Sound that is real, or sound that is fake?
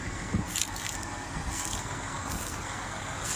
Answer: fake